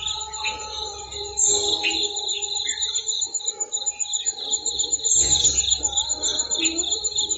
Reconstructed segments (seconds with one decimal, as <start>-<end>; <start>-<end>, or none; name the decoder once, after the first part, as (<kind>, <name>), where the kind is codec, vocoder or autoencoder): 3.8-5.4 (vocoder, BigVGAN v2)